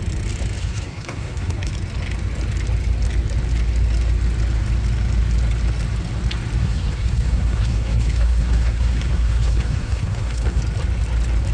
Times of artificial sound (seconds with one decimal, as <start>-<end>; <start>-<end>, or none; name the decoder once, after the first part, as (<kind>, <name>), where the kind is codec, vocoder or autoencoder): 0.6-1.7 (codec, SNAC); 6.6-10.6